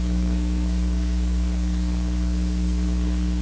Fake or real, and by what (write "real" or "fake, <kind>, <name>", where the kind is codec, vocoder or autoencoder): fake, codec, SNAC